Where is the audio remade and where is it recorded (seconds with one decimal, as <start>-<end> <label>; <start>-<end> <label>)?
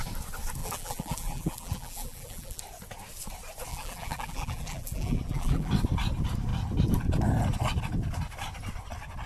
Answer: 0.0-0.6 recorded; 0.6-2.6 remade; 2.6-3.7 recorded; 3.7-5.7 remade; 5.7-9.3 recorded